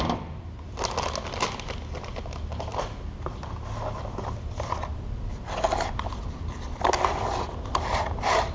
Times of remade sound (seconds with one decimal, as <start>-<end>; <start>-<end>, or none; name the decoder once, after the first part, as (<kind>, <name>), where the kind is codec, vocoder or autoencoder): none